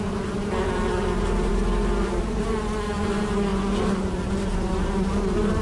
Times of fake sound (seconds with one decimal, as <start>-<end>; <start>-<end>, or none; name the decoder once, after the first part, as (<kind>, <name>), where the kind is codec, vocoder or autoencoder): none